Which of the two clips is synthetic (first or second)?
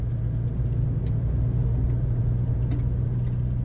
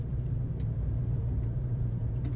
second